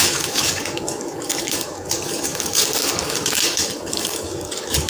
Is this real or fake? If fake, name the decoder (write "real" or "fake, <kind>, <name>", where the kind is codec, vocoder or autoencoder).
fake, codec, DAC